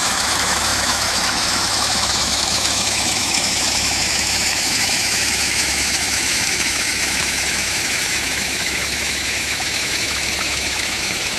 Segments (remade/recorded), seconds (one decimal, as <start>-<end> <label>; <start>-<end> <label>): 0.0-11.4 remade